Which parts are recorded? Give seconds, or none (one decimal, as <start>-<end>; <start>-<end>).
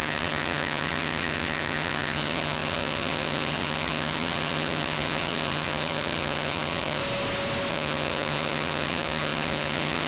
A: 7.0-7.7